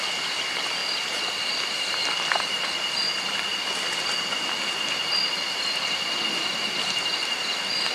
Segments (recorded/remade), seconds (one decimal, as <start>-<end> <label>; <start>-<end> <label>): 0.0-7.9 recorded